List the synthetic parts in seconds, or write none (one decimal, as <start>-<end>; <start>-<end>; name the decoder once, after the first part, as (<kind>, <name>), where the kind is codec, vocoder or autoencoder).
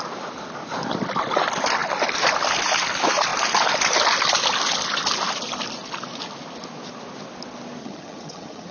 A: 7.8-8.7 (vocoder, HiFi-GAN)